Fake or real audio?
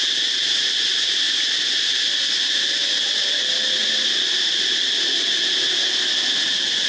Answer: real